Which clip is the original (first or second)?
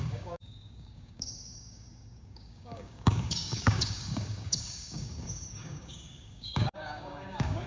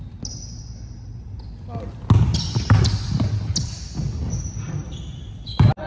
second